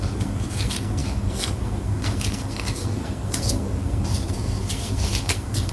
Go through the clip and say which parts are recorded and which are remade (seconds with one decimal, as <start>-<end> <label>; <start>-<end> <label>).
0.0-5.7 remade